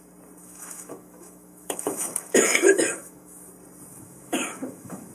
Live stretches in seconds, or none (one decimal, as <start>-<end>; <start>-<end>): 0.0-0.4; 3.5-3.9